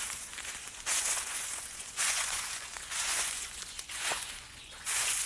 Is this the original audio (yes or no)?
no